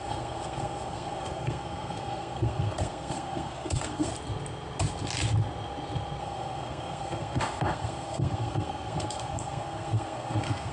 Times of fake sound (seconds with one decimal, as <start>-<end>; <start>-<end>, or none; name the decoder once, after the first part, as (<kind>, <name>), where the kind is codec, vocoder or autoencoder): 0.0-4.1 (codec, SNAC); 6.2-10.7